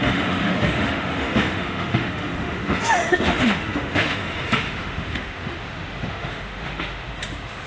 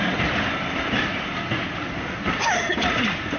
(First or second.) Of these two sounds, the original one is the second